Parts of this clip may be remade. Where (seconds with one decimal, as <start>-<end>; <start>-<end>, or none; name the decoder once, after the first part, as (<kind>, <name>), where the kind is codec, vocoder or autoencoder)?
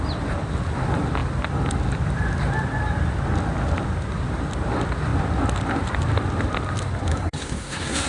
7.1-8.1 (codec, SNAC)